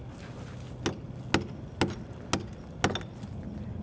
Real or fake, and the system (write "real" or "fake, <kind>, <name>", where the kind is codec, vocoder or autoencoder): real